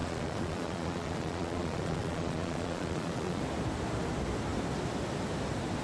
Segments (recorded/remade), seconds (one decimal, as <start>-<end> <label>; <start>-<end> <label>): 0.0-3.4 remade; 3.4-5.8 recorded